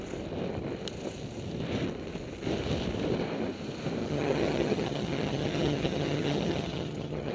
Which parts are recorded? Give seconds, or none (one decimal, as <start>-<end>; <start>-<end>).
0.0-4.0